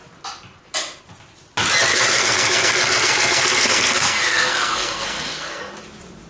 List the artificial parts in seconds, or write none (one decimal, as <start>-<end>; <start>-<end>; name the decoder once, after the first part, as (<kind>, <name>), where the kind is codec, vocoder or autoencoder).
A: 1.9-5.7 (codec, SNAC)